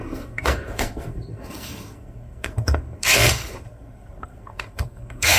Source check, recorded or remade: remade